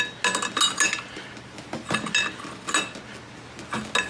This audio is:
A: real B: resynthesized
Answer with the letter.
A